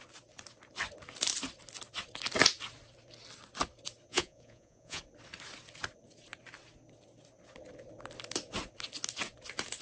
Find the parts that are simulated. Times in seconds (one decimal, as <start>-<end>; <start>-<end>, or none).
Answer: 4.1-5.0